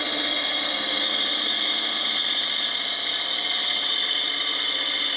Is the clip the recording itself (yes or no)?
yes